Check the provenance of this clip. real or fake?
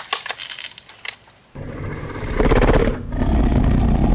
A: real